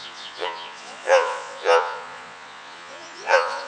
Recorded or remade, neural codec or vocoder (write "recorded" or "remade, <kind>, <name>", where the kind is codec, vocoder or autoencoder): remade, vocoder, Vocos